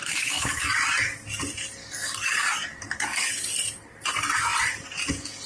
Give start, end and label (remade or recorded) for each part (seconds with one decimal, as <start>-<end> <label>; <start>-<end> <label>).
0.0-0.6 remade; 0.6-1.8 recorded; 1.8-3.3 remade; 3.3-5.5 recorded